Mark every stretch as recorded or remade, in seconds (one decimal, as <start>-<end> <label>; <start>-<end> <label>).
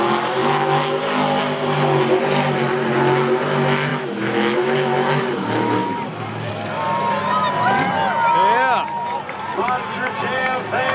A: 0.0-0.4 recorded; 0.4-1.0 remade; 1.0-3.9 recorded; 3.9-5.2 remade; 5.2-10.9 recorded